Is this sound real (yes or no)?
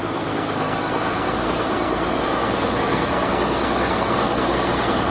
no